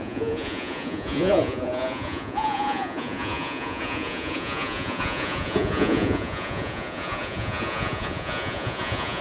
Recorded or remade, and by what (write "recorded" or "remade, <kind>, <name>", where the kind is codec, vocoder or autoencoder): remade, vocoder, Vocos